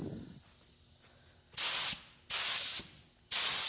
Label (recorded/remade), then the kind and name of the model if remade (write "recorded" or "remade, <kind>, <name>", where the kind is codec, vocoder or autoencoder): recorded